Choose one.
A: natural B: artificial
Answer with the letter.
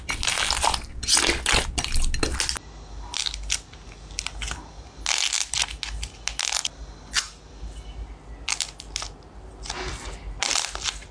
A